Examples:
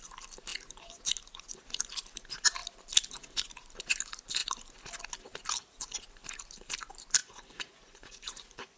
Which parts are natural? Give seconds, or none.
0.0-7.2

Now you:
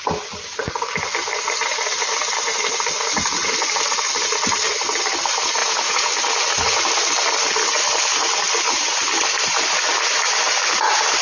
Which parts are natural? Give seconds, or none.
0.0-5.6; 6.1-11.2

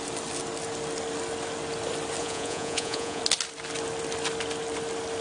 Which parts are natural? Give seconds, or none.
0.0-2.2; 3.2-5.2

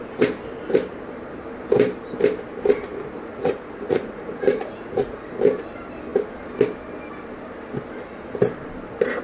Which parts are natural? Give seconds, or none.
0.0-3.3; 5.3-9.2

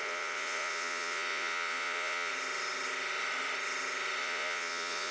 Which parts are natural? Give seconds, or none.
2.3-4.2